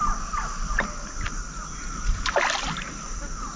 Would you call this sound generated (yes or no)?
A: no